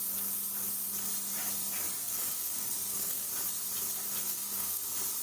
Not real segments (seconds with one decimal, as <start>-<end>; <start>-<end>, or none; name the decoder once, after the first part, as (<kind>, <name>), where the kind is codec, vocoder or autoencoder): 2.0-3.3 (codec, SNAC); 4.2-4.8